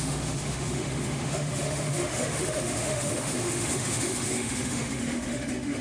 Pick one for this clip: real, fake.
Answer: fake